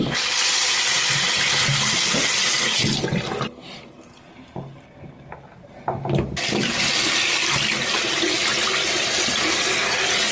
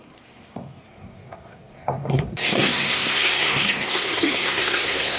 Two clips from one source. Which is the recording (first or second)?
first